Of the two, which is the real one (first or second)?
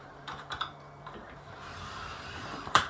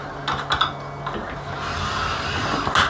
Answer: second